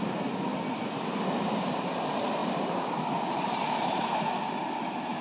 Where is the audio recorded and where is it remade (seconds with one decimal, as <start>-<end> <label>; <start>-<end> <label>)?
0.0-2.4 recorded; 2.4-3.9 remade; 3.9-5.2 recorded